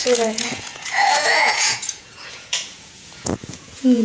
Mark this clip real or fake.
fake